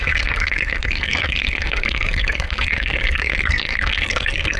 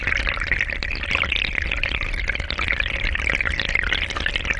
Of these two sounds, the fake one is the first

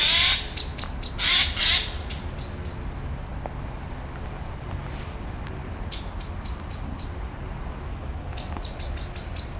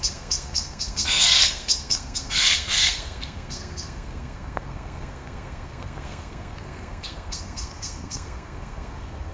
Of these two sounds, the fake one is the second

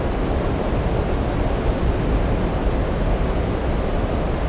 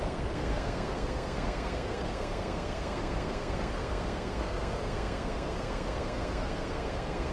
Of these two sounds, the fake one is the second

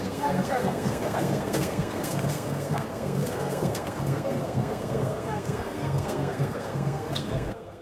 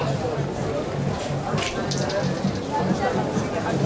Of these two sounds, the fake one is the first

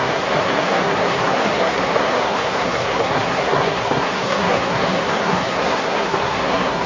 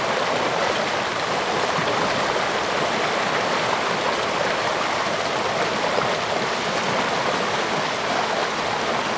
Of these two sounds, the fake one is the first